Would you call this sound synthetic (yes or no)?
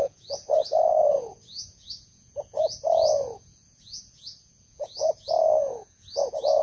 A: yes